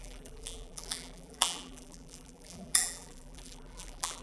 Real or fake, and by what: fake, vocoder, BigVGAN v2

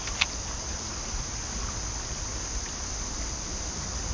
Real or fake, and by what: real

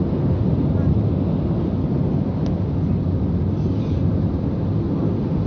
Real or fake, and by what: real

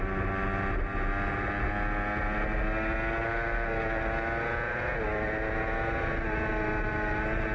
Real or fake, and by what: real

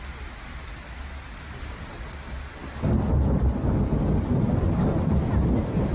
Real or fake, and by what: real